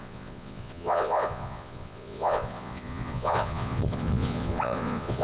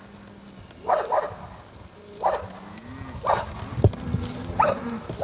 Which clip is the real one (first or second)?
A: second